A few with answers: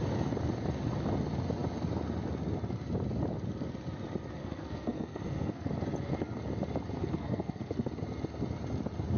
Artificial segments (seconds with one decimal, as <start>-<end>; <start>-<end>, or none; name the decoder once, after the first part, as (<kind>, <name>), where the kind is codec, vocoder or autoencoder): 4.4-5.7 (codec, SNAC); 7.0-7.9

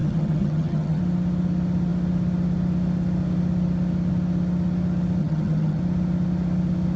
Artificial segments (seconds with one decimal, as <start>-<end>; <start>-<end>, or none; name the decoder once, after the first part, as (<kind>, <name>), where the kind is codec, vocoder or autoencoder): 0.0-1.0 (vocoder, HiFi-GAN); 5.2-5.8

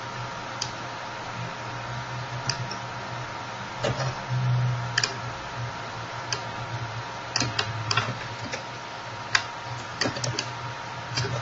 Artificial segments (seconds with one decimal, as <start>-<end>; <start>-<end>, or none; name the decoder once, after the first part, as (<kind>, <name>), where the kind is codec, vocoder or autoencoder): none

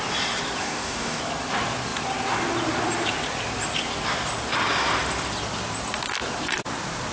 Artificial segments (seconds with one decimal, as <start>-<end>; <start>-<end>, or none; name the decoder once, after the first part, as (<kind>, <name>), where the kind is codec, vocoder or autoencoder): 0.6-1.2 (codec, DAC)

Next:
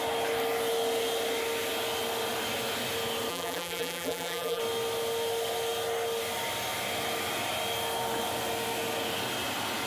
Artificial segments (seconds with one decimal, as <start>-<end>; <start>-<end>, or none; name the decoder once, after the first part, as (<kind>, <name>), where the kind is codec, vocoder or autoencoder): 3.3-4.6 (vocoder, BigVGAN v2)